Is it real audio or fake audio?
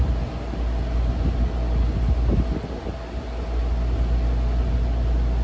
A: real